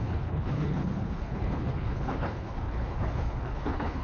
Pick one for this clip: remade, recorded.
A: remade